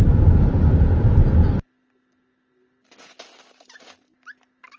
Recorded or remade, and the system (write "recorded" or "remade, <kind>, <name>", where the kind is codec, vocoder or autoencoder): recorded